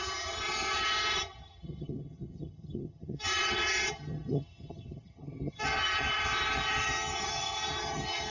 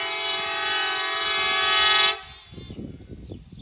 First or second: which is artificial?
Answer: first